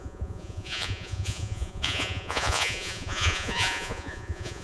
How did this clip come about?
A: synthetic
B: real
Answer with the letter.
A